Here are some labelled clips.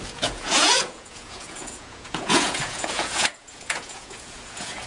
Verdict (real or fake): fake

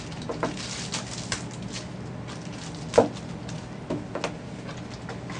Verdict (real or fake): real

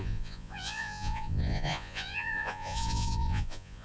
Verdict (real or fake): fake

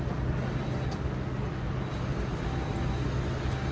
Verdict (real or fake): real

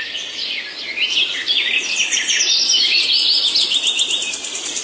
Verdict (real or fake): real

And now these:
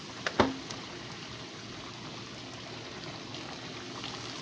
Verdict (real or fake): real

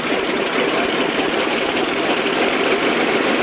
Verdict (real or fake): real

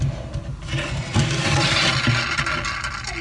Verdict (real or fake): real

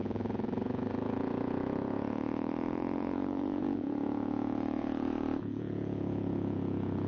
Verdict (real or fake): fake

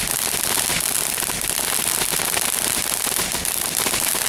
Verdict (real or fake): real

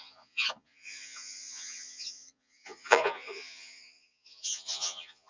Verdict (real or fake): fake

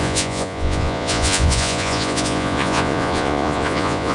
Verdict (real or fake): fake